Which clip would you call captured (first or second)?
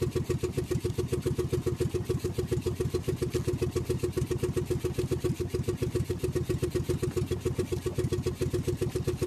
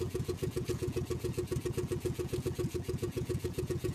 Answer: first